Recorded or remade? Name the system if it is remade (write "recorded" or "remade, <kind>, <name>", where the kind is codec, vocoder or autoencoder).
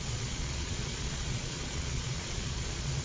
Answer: remade, vocoder, Vocos